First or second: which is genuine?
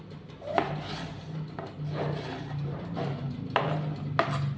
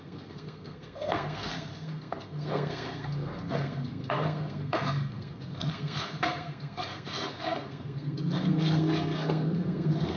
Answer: first